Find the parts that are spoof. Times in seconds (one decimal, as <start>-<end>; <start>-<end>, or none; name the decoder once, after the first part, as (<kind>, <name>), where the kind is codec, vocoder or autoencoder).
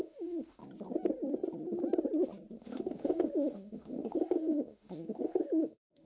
0.0-0.6 (autoencoder, DAC-VAE); 2.6-6.1